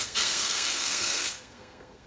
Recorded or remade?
remade